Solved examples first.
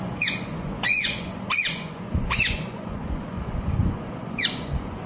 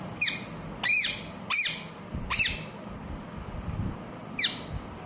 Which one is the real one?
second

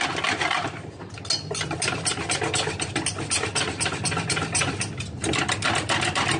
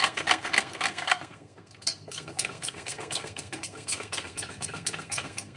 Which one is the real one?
first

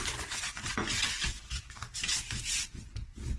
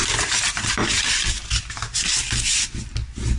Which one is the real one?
second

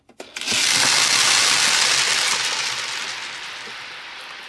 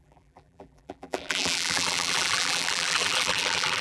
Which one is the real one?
first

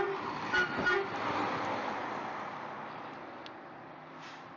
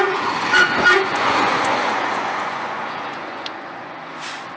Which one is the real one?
first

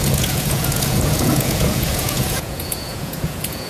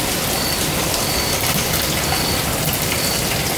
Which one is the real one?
second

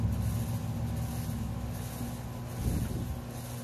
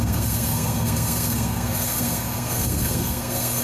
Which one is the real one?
first